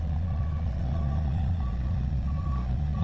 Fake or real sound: fake